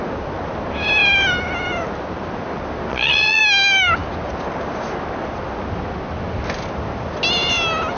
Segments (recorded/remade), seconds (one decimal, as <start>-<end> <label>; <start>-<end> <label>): 0.0-2.9 recorded; 2.9-3.4 remade; 3.4-8.0 recorded